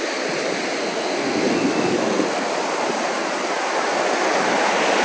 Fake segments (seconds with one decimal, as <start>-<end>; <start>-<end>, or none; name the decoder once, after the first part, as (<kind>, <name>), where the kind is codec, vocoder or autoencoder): 0.8-2.5 (codec, SNAC)